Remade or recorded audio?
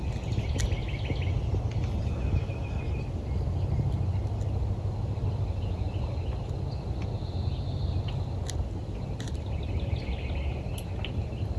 recorded